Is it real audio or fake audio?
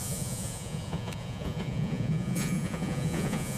fake